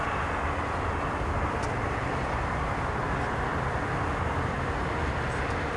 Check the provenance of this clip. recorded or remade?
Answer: recorded